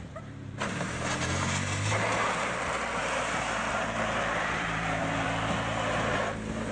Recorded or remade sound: remade